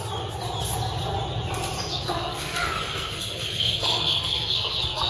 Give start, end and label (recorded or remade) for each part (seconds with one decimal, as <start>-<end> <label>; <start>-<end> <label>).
0.0-1.9 recorded; 1.9-5.1 remade